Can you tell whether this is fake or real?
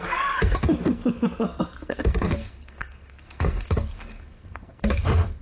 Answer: fake